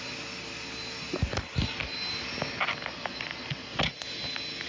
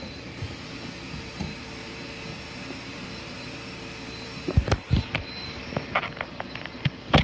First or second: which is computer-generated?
second